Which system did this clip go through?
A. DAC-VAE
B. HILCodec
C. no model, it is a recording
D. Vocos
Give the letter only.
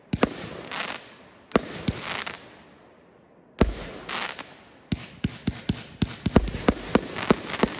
C